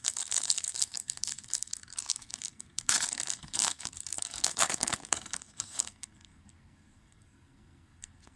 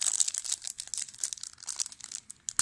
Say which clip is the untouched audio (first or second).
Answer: second